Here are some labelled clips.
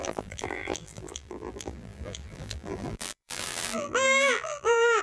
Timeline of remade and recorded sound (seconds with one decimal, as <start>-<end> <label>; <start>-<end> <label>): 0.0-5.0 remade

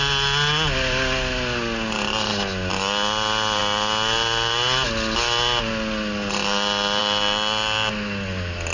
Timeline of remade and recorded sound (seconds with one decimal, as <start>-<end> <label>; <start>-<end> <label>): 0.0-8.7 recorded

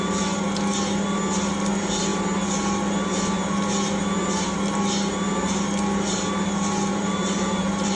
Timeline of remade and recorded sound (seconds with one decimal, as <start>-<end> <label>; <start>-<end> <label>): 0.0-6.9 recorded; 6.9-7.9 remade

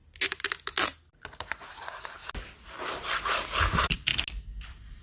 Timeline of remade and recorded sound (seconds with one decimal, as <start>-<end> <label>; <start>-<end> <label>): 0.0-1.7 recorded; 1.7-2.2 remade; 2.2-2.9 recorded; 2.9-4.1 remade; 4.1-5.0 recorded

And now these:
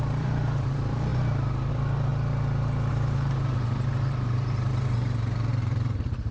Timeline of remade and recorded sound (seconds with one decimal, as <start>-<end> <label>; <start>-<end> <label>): 0.0-2.1 remade; 2.1-2.9 recorded; 2.9-6.3 remade

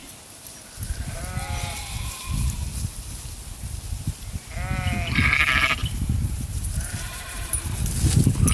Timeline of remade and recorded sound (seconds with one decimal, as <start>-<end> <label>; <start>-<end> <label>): 0.0-5.8 recorded; 5.8-7.9 remade; 7.9-8.5 recorded